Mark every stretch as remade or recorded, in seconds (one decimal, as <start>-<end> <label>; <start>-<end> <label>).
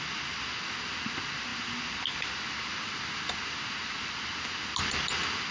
0.0-5.5 recorded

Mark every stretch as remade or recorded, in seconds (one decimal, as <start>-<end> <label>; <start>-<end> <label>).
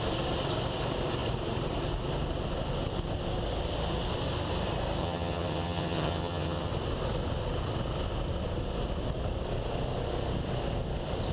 0.0-5.0 recorded; 5.0-6.7 remade; 6.7-11.3 recorded